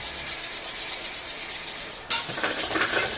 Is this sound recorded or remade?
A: remade